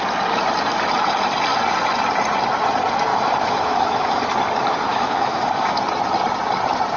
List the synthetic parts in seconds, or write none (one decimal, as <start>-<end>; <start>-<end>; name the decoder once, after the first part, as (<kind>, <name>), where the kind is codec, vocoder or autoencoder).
3.1-4.3 (autoencoder, DAC-VAE); 4.9-5.8